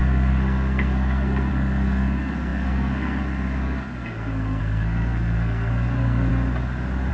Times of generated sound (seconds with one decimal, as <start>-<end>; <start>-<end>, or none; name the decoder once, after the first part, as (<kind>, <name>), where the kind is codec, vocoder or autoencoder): 0.0-6.3 (codec, SNAC)